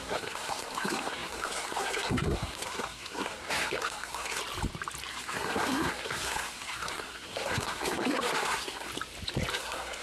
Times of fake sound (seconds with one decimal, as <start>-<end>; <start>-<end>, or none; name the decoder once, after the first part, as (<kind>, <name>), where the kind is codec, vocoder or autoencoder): 0.0-4.4 (codec, SNAC); 5.1-8.9; 9.5-10.0